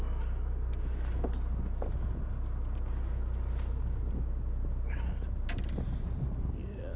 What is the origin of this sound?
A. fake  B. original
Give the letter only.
B